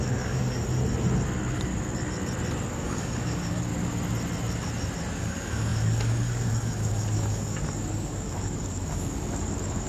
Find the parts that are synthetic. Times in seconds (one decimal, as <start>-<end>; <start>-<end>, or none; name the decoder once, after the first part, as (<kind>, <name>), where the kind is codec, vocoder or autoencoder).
0.0-0.6 (codec, DAC); 2.7-3.7; 5.2-9.9